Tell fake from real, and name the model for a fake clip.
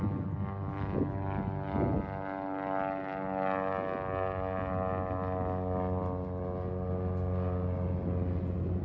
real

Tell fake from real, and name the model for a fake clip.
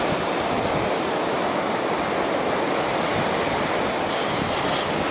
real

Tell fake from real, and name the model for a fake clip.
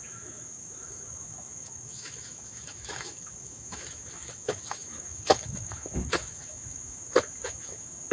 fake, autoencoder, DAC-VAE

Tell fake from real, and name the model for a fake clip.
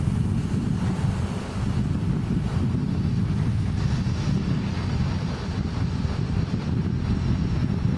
real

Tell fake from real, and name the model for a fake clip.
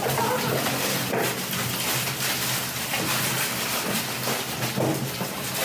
real